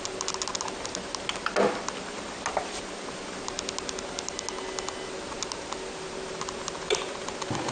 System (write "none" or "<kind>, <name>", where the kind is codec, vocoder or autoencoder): none